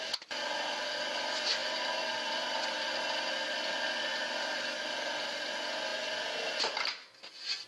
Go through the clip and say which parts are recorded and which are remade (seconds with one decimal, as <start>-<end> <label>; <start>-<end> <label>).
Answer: 0.0-1.6 recorded; 1.6-2.1 remade; 2.1-7.7 recorded